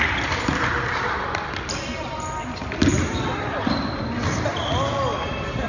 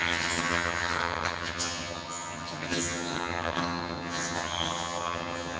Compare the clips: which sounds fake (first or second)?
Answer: second